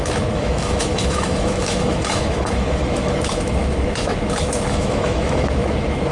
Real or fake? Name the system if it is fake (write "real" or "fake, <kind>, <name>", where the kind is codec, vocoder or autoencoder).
fake, autoencoder, DAC-VAE